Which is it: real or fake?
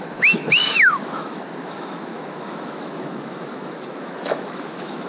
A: fake